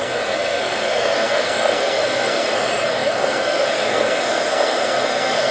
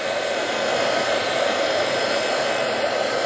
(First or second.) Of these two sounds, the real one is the second